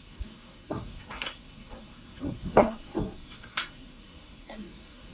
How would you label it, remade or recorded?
remade